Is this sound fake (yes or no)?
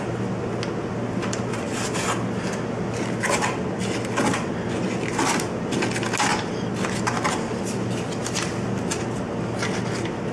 no